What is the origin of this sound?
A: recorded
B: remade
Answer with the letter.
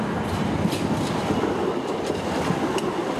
A